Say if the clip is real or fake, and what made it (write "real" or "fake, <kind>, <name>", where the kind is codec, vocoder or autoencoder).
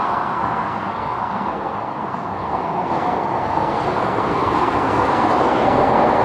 fake, codec, SNAC